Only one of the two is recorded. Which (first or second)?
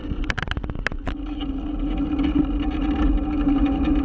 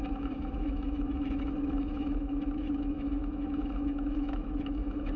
first